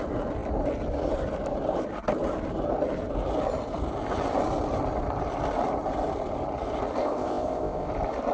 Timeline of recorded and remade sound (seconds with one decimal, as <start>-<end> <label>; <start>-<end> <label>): 0.0-7.0 recorded; 7.0-7.9 remade; 7.9-8.3 recorded